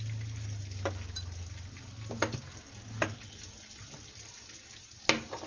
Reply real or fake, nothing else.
real